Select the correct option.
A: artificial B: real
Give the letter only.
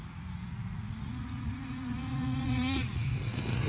A